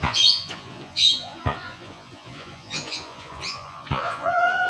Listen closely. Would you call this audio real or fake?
fake